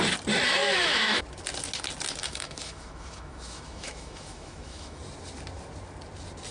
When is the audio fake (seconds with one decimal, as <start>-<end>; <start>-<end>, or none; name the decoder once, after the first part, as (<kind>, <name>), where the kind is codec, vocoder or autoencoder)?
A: 0.6-1.2 (autoencoder, DAC-VAE); 2.2-5.0